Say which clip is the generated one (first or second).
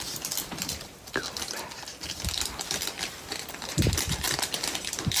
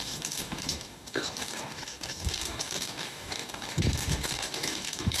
second